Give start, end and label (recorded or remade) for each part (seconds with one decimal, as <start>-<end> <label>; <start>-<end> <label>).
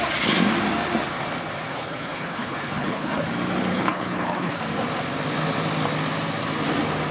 0.0-1.7 recorded; 1.7-3.3 remade; 3.3-3.7 recorded; 3.7-4.6 remade; 4.6-7.1 recorded